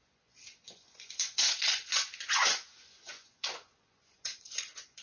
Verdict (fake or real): fake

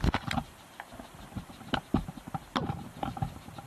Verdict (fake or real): real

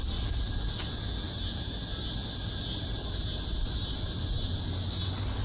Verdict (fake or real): real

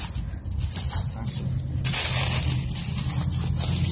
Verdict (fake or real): real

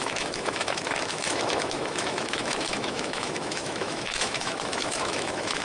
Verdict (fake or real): fake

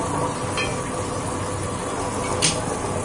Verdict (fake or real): real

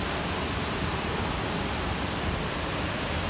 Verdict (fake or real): real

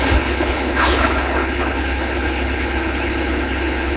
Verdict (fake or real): fake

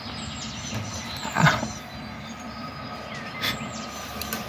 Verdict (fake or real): real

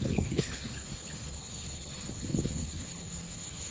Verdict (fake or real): fake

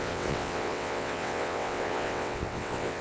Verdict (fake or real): fake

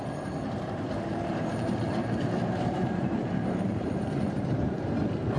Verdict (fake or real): fake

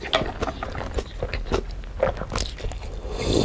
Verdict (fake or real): real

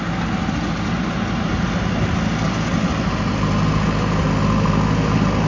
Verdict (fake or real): real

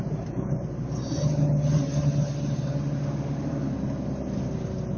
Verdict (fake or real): real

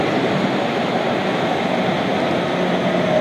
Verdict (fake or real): real